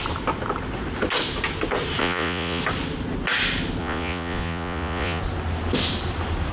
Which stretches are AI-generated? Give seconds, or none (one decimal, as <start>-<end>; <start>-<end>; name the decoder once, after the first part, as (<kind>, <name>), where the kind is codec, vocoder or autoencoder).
2.0-2.6 (vocoder, Vocos); 3.8-5.2